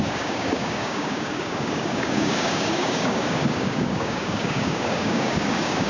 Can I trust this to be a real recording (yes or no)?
no